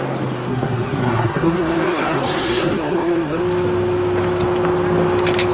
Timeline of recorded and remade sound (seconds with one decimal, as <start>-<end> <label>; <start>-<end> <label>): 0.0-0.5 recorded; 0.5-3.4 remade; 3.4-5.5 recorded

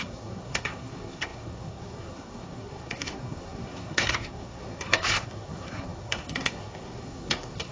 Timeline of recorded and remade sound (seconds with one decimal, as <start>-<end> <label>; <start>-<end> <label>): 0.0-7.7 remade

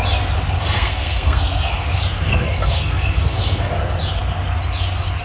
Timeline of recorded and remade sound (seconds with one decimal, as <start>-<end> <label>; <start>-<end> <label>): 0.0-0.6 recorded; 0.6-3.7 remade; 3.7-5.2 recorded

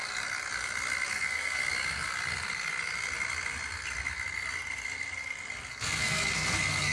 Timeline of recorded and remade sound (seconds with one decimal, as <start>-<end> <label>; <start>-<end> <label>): 0.0-1.1 recorded; 1.1-1.6 remade; 1.6-5.7 recorded; 5.7-6.9 remade

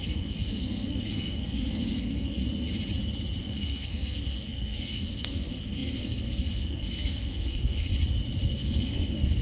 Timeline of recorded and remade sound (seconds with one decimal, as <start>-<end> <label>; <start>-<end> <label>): 0.0-2.4 remade; 2.4-3.4 recorded; 3.4-7.9 remade; 7.9-8.4 recorded; 8.4-9.4 remade

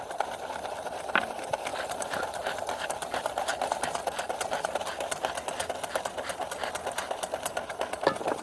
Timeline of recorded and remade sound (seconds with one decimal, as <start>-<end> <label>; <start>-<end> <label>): 0.0-8.4 recorded